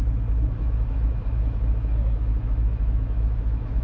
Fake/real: fake